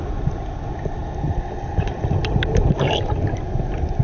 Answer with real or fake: real